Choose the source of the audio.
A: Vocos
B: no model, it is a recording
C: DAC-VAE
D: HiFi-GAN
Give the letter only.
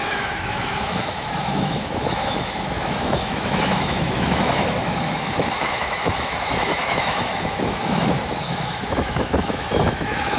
C